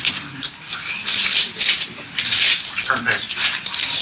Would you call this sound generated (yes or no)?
no